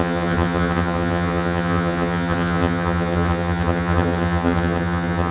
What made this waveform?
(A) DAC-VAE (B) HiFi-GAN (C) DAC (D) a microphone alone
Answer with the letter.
B